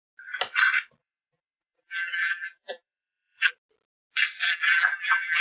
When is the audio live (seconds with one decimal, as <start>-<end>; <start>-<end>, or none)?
0.0-1.0; 3.5-4.4